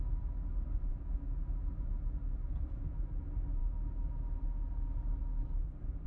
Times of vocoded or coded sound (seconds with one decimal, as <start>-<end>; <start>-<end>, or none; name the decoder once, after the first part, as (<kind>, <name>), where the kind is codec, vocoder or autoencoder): none